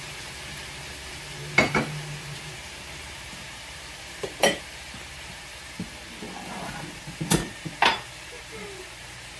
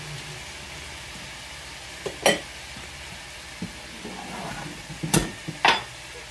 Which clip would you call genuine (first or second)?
second